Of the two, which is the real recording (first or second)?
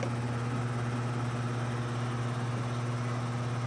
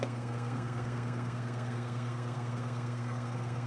first